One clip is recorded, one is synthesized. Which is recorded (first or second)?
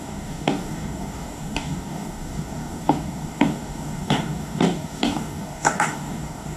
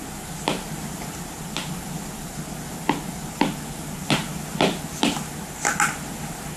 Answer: second